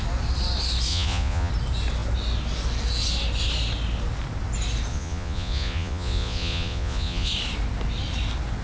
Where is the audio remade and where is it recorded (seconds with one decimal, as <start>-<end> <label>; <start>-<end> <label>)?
0.0-0.9 recorded; 0.9-1.5 remade; 1.5-4.9 recorded; 4.9-7.3 remade; 7.3-8.6 recorded